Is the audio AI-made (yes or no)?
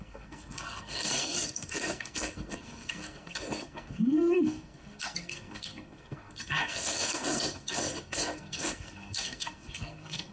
yes